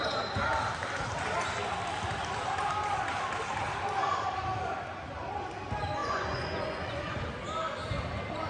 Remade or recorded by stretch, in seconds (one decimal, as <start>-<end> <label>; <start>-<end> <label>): 0.0-6.0 recorded; 6.0-7.3 remade; 7.3-8.5 recorded